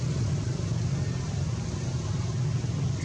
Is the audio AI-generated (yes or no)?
no